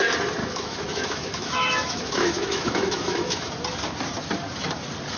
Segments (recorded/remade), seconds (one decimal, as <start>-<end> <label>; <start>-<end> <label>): 0.0-0.4 recorded; 0.4-3.5 remade; 3.5-5.2 recorded